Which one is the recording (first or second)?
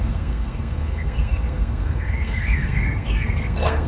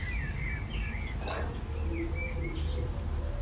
second